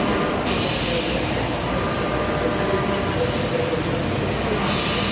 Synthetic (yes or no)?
no